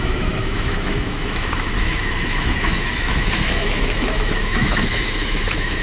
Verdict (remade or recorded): remade